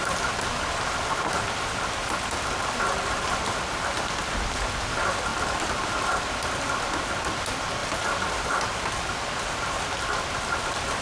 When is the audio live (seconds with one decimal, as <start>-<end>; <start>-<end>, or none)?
none